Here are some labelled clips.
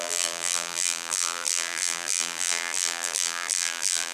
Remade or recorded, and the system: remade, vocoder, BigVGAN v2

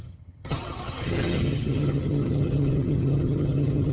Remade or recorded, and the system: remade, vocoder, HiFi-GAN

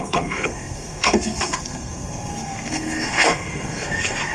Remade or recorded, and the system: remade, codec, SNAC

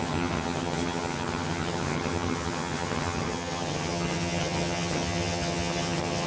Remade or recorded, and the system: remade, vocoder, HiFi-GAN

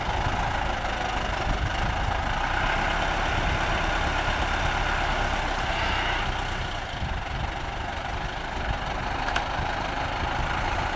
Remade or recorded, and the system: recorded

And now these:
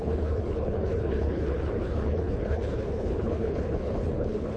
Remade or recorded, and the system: remade, codec, HILCodec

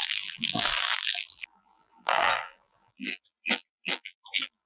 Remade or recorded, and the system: remade, vocoder, BigVGAN v2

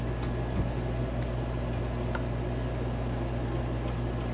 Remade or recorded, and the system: recorded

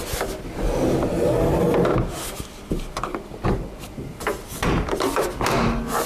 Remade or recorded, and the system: recorded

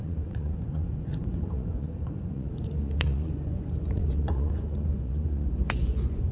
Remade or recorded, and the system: remade, vocoder, Vocos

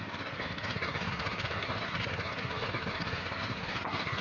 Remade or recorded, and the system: remade, codec, SNAC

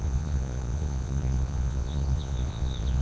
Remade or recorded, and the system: remade, vocoder, Vocos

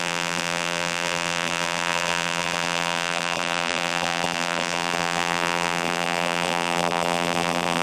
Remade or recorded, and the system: remade, vocoder, BigVGAN v2